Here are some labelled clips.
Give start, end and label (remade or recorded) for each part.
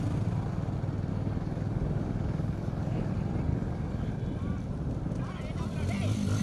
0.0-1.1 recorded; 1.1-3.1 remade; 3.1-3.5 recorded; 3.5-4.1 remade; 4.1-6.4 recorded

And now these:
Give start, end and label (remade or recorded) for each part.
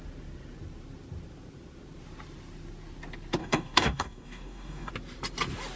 0.0-3.4 recorded; 3.4-4.9 remade; 4.9-5.8 recorded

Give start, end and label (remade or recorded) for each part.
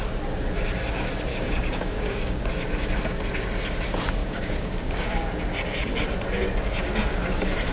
0.0-1.3 recorded; 1.3-2.5 remade; 2.5-4.2 recorded; 4.2-5.3 remade; 5.3-7.7 recorded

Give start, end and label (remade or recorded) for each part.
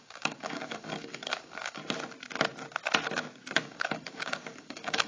0.0-1.8 remade; 1.8-3.6 recorded; 3.6-5.1 remade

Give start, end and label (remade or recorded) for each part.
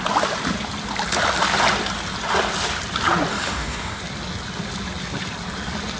0.0-3.3 recorded; 3.3-4.0 remade; 4.0-6.0 recorded